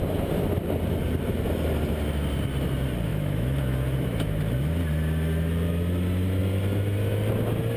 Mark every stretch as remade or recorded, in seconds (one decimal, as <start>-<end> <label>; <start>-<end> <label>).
0.0-3.1 recorded; 3.1-4.4 remade; 4.4-7.8 recorded